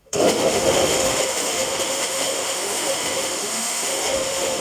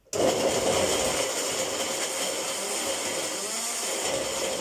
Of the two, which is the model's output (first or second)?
first